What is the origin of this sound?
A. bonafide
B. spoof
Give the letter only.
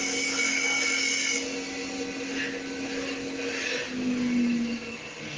A